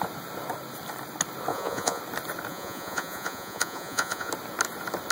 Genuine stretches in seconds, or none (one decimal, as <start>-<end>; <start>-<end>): 0.0-1.5; 2.0-2.5; 4.3-5.1